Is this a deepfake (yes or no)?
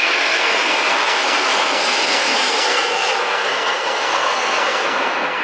yes